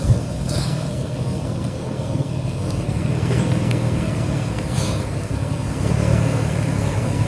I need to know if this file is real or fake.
fake